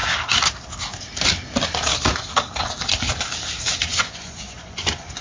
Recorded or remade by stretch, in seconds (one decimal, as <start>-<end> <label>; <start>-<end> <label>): 0.0-3.9 recorded; 3.9-5.2 remade